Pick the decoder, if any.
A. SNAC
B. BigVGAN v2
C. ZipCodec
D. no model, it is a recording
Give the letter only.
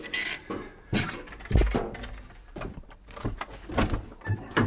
D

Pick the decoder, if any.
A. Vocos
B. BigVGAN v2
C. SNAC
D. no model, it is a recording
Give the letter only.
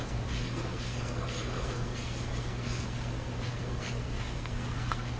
C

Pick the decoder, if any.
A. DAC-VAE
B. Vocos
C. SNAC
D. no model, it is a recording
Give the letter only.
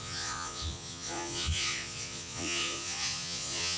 B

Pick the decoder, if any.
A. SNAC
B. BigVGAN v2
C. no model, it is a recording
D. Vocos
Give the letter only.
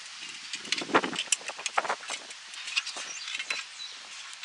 C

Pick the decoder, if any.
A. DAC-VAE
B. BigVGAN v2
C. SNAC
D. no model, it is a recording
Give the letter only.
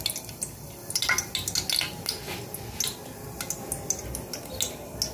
D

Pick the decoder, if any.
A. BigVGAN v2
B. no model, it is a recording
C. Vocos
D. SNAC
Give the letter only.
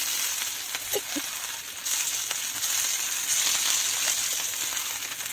B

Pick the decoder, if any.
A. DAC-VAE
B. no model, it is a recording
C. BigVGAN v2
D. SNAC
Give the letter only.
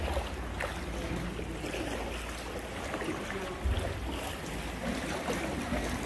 B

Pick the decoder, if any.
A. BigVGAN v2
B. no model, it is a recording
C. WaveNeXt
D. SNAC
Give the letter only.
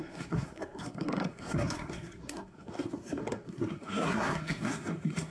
D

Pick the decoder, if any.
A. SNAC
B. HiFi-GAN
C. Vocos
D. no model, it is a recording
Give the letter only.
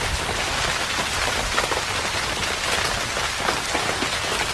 D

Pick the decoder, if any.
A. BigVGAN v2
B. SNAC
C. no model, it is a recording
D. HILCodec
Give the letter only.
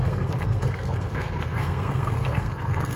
B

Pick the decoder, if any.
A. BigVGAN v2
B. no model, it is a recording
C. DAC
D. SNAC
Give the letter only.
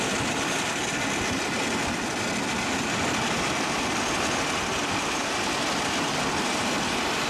B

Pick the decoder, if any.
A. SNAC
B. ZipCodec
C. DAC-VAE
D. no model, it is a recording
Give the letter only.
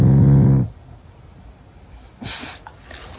D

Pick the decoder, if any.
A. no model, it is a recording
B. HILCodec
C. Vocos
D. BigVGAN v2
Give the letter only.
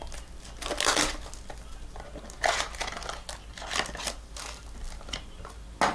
A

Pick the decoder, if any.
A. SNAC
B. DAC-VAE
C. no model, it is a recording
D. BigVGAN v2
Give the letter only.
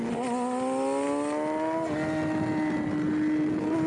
C